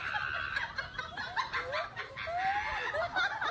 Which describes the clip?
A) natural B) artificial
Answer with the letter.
A